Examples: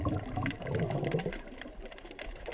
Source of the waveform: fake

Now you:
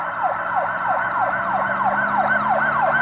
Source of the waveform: real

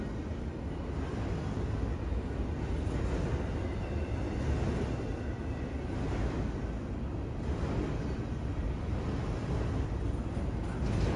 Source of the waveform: real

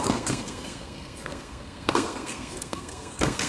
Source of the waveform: fake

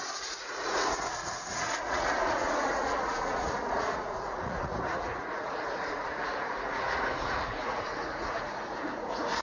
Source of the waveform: fake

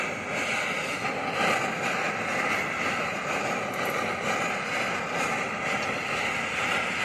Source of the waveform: real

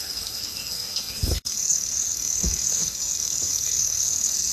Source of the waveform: fake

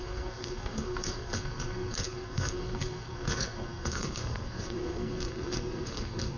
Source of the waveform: fake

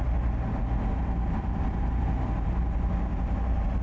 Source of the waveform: real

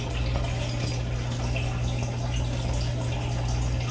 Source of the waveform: real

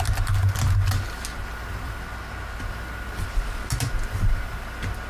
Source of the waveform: real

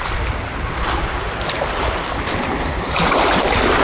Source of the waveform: real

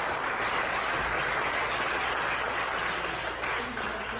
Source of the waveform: real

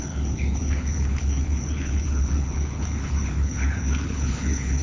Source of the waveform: fake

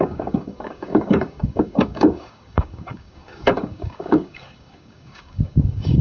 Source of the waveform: fake